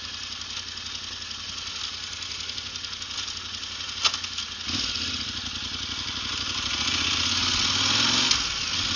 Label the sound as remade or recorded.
recorded